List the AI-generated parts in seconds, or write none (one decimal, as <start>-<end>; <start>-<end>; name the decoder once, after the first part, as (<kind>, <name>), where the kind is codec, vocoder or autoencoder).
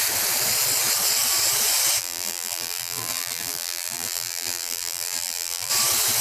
2.0-5.7 (vocoder, BigVGAN v2)